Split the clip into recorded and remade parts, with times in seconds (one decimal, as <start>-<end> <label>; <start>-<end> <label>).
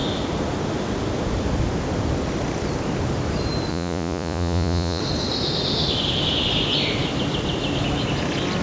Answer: 0.0-3.7 recorded; 3.7-5.0 remade; 5.0-8.6 recorded